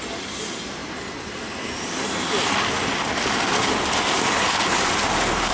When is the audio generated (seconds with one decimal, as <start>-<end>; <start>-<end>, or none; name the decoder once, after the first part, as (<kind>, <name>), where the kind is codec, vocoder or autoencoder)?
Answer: none